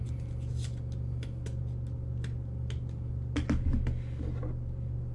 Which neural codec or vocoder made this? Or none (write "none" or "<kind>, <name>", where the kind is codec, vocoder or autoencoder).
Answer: none